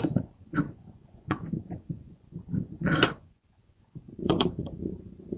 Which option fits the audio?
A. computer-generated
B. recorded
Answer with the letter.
A